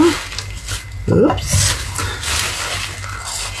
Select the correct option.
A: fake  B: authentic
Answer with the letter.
B